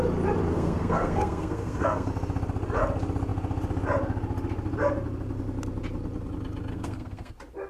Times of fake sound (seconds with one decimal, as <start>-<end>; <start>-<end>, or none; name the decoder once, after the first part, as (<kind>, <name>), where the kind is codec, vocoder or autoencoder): 0.5-2.1 (codec, SNAC); 6.7-7.3